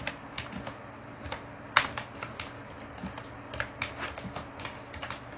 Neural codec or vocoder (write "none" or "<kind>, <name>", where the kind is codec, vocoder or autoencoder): none